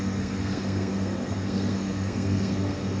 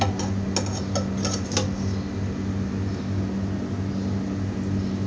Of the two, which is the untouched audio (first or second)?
second